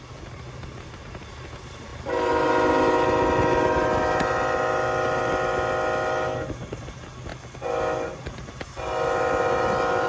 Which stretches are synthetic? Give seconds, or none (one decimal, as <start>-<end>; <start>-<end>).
none